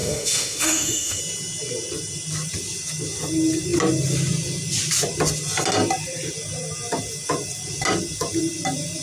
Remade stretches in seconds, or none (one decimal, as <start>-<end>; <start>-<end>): 0.0-1.2